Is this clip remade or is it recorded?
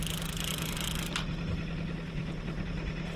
recorded